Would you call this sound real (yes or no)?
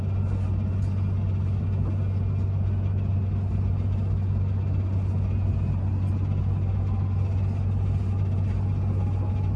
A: yes